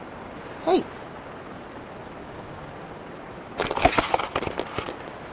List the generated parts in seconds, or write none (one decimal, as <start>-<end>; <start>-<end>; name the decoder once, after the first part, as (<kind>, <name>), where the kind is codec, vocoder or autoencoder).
2.2-2.7 (codec, DAC)